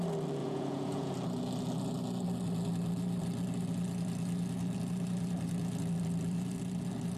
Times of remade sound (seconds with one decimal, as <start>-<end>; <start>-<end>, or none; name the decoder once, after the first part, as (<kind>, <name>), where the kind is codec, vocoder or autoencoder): 0.4-1.1 (vocoder, Vocos)